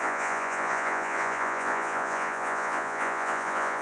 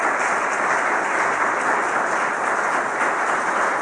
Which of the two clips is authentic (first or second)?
second